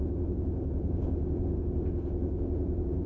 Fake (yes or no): yes